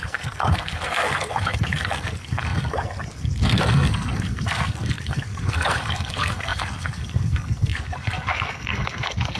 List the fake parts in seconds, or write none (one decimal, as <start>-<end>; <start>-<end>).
0.0-9.4